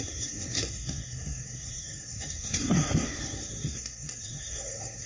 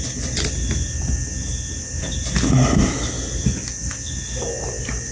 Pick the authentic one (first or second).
second